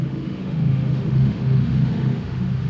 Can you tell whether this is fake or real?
fake